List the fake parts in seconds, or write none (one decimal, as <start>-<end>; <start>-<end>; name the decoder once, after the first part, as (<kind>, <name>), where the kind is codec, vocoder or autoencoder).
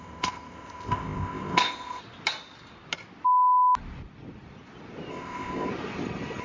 0.0-2.0 (codec, ZipCodec); 5.1-5.7